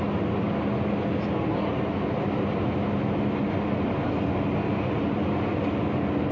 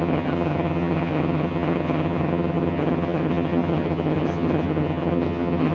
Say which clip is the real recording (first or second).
first